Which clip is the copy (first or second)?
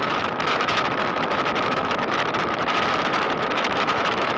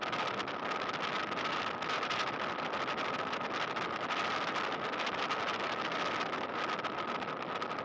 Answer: first